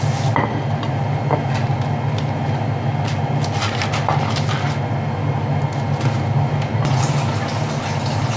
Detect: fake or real real